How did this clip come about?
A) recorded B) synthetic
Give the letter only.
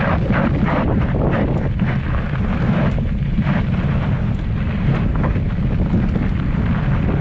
A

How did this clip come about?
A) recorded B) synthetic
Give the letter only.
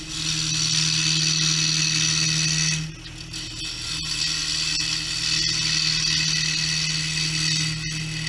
A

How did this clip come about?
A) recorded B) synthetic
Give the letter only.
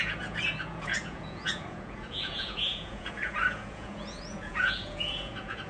B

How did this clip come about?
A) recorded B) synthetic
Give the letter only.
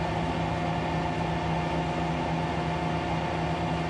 A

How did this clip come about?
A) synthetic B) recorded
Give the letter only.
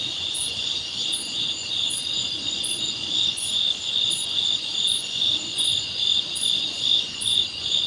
A